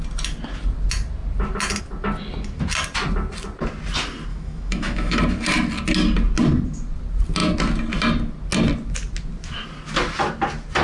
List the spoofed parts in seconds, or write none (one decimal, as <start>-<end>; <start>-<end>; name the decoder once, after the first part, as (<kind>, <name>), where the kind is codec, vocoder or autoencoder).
4.3-5.2 (autoencoder, DAC-VAE)